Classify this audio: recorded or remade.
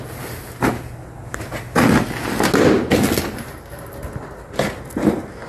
recorded